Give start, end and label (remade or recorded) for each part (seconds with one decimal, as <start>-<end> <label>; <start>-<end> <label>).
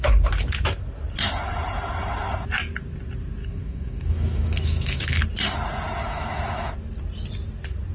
0.0-3.4 recorded; 3.4-5.2 remade; 5.2-6.0 recorded; 6.0-6.7 remade; 6.7-7.9 recorded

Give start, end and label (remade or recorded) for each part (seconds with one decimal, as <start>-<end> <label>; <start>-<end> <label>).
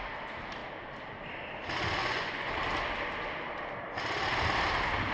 0.0-2.0 recorded; 2.0-2.5 remade; 2.5-5.1 recorded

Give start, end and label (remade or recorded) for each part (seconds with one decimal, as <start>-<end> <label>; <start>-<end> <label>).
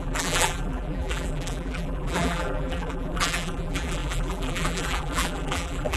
0.0-6.0 remade